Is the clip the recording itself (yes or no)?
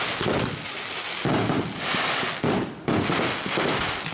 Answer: yes